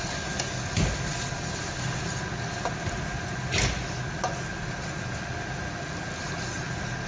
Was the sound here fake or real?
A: real